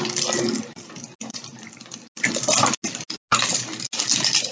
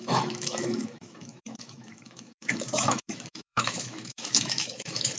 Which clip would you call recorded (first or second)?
first